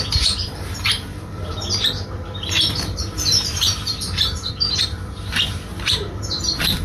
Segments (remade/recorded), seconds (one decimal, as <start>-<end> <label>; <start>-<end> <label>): 0.0-0.4 recorded; 0.4-4.5 remade; 4.5-5.7 recorded; 5.7-6.8 remade